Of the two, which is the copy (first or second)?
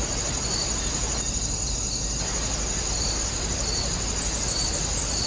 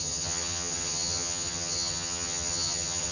second